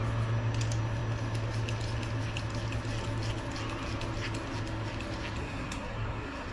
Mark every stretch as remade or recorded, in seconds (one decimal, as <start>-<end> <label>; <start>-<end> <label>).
0.0-5.4 recorded; 5.4-6.5 remade